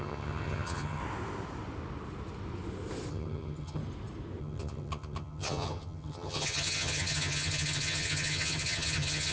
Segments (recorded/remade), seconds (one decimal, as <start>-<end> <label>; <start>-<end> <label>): 0.0-1.0 remade; 1.0-3.1 recorded; 3.1-3.8 remade; 3.8-4.4 recorded; 4.4-9.3 remade